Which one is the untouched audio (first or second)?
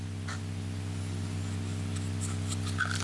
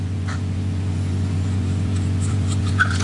first